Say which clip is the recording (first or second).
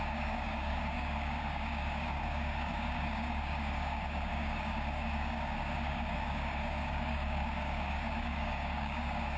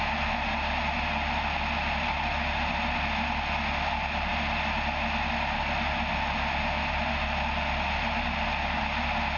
second